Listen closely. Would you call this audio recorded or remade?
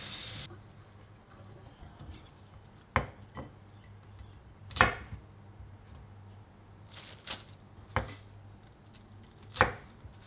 recorded